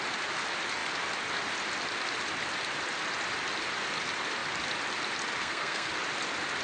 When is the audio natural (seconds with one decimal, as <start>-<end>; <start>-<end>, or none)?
0.0-5.4; 5.9-6.6